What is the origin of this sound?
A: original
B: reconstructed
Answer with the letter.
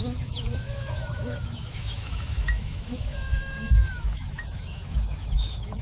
B